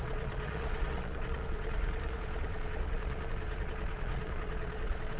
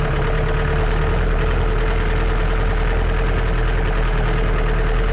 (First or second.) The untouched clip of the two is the second